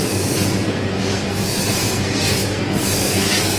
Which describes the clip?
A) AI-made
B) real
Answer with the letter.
A